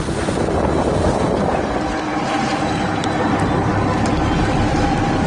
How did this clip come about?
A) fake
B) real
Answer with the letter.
B